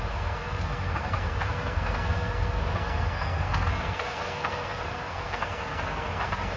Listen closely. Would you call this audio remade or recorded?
remade